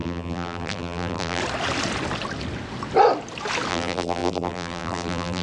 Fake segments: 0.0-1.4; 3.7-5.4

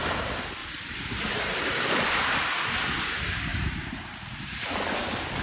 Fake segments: 0.6-2.4; 3.5-4.6

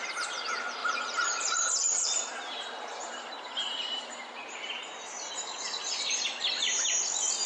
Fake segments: 0.8-5.3

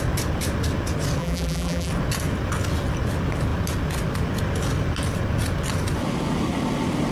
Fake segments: 1.2-1.9